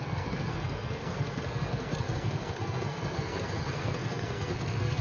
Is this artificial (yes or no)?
yes